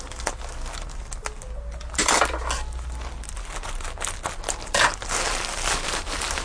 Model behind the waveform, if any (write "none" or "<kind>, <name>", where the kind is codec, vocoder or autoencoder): none